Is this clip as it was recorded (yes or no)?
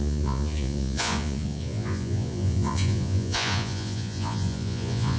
no